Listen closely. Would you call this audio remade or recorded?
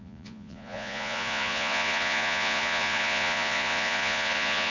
remade